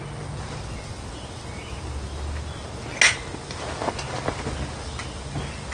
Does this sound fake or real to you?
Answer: real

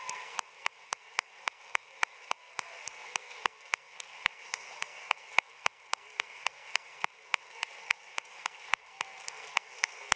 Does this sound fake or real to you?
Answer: fake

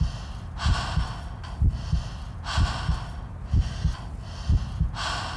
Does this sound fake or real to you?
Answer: real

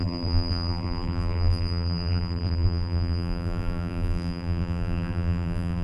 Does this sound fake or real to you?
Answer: fake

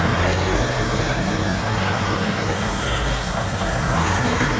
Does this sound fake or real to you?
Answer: fake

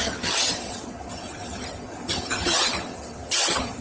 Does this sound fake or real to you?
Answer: fake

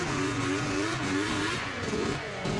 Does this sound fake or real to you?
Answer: fake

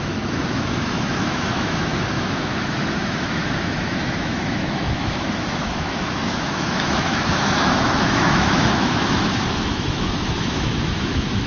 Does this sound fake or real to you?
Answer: fake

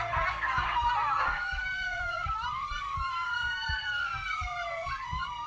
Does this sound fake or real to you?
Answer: fake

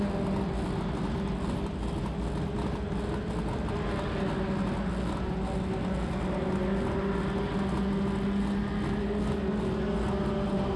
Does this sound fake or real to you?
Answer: real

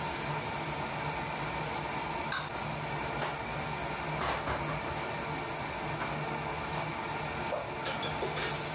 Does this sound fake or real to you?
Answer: real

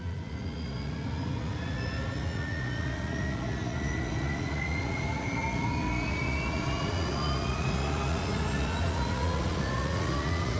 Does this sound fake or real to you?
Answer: fake